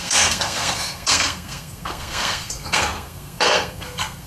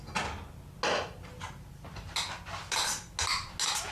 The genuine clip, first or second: second